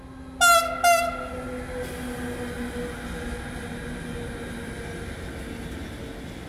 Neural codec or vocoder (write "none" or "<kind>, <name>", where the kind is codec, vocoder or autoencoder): none